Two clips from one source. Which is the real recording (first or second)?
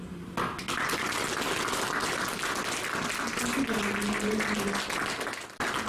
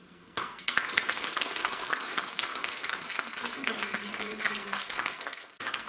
first